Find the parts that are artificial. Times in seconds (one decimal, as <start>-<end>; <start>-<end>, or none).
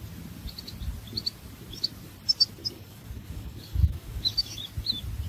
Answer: 2.6-4.6